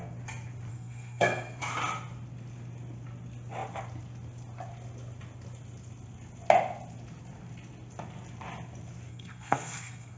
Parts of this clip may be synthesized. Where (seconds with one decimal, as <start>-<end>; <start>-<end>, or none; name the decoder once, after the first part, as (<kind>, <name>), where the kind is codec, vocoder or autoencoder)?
0.7-1.6 (codec, SNAC); 9.1-10.2